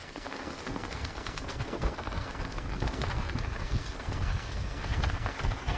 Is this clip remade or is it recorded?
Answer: remade